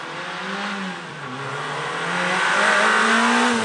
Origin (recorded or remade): recorded